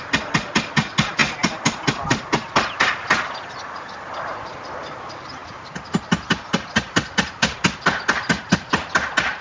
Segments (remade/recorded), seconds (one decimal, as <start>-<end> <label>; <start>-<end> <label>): 0.0-9.4 recorded